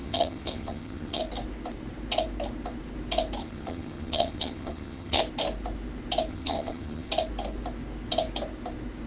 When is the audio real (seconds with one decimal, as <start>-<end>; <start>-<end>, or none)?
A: 1.2-3.4; 5.2-6.3; 7.1-9.1

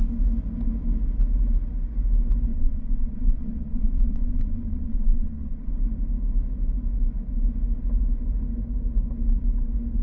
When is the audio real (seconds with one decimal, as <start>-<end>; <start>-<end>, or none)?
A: 0.0-2.5; 5.7-10.0

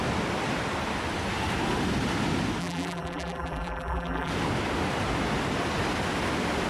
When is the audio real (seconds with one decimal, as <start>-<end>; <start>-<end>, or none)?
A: 0.0-2.6; 4.3-6.7

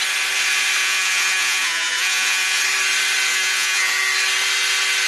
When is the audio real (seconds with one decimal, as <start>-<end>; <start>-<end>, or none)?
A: 0.0-0.8; 2.6-3.3; 3.9-5.1

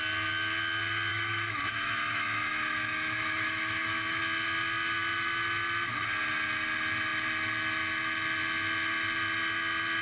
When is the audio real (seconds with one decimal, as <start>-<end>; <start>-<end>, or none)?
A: 0.0-1.1; 4.2-10.0

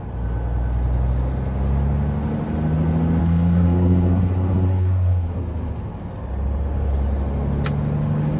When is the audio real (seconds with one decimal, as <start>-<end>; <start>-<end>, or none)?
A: 0.0-3.2; 5.4-8.4

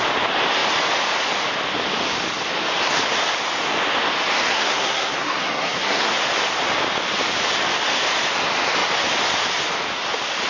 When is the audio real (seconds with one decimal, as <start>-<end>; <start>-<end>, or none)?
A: 0.0-4.5; 6.2-10.5

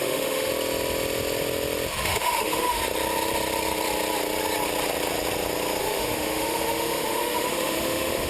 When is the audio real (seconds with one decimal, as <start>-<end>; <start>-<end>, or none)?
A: 0.5-2.0; 2.8-5.8